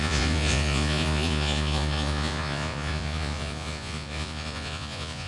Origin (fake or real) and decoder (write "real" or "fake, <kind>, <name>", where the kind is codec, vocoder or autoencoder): fake, vocoder, Vocos